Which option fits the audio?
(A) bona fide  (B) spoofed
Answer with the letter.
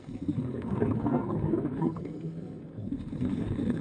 B